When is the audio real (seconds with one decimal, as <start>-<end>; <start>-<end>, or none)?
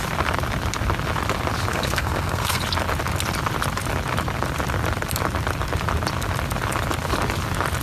0.0-1.7; 2.6-7.8